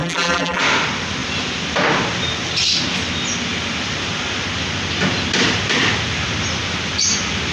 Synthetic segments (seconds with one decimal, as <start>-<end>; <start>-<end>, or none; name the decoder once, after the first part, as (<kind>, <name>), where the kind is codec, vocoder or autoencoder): 0.0-0.6 (vocoder, BigVGAN v2)